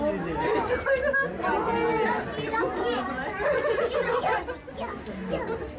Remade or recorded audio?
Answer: recorded